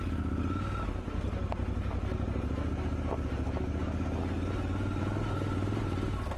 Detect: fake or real real